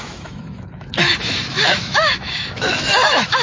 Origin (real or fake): fake